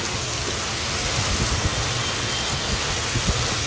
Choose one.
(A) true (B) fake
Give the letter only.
A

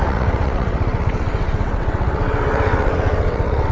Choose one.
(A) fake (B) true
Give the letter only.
A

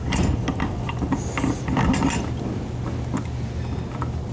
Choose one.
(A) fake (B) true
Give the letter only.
B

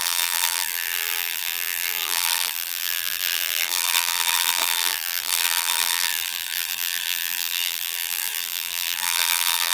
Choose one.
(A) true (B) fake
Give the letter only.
B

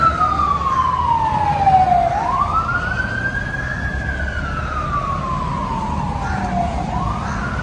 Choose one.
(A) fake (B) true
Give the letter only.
B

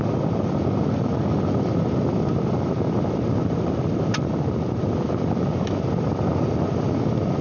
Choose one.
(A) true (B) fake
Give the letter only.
A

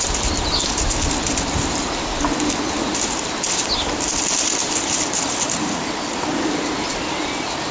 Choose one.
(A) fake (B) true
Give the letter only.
B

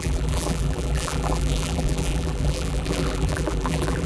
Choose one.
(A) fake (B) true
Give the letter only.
A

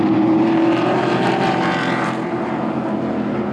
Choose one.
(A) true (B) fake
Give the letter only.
B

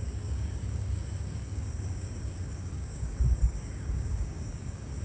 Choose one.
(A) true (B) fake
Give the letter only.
B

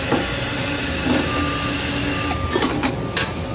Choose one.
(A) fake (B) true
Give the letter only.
B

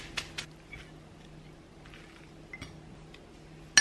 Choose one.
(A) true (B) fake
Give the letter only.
A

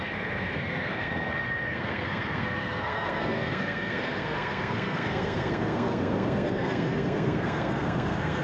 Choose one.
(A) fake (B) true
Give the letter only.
A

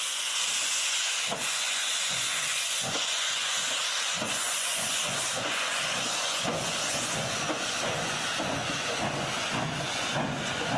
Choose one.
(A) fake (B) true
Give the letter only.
A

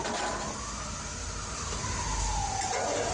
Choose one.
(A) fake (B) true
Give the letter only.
B